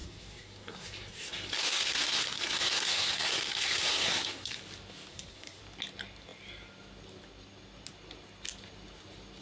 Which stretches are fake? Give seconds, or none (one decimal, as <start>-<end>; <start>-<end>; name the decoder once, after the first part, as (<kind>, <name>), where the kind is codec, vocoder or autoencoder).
0.0-4.6 (codec, SNAC); 5.1-5.6